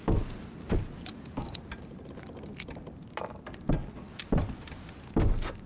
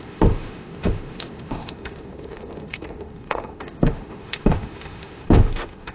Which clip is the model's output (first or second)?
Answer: second